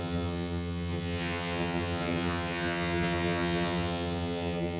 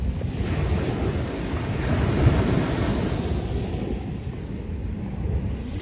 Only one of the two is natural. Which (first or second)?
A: second